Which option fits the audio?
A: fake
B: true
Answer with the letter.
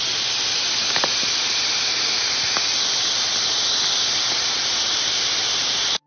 B